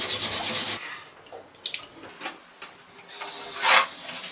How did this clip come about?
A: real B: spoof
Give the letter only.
A